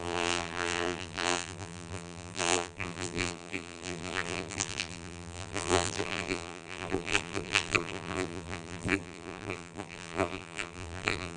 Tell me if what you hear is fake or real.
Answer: fake